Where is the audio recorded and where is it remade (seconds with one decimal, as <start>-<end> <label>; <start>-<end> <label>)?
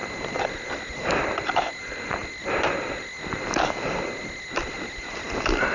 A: 0.0-5.7 recorded